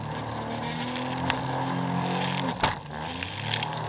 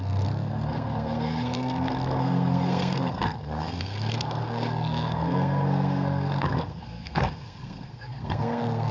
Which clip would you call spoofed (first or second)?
second